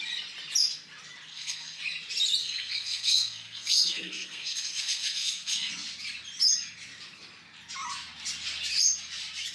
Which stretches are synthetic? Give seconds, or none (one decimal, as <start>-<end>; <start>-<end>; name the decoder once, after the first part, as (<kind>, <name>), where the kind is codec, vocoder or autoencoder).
1.3-1.8 (codec, SNAC); 2.4-5.7